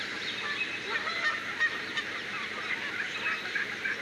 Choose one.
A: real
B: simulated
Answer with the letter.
B